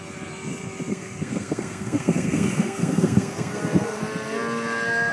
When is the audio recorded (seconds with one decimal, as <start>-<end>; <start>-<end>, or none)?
0.0-0.9; 4.0-5.1